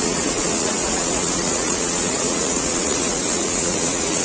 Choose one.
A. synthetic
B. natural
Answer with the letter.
A